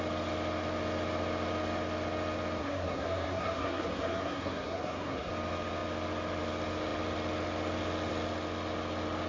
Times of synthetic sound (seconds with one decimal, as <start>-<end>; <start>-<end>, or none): 2.6-5.3